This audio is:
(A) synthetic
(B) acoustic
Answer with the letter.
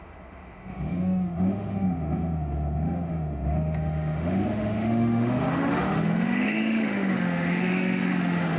A